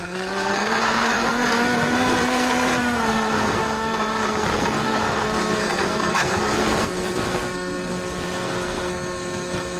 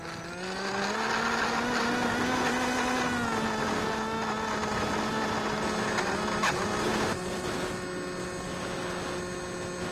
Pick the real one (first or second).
second